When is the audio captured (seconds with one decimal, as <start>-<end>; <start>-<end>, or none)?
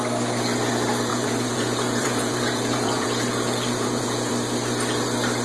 0.0-1.1; 4.3-5.4